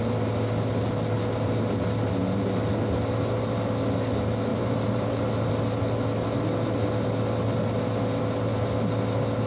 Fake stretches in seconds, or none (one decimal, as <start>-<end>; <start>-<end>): 4.5-5.5